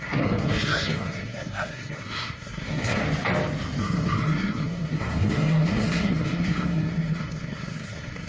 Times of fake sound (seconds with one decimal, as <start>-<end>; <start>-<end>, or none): 0.0-3.0; 3.8-8.3